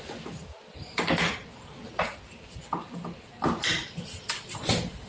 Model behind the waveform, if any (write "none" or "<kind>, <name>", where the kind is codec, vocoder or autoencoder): none